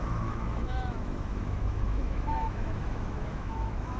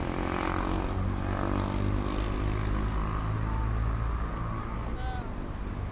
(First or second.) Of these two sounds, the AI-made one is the first